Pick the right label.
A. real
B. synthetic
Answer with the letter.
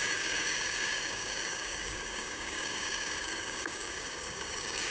B